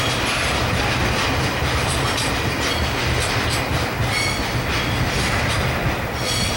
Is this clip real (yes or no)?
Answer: yes